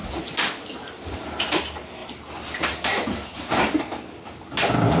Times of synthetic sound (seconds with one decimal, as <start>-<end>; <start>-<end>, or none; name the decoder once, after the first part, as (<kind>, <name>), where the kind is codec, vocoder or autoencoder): none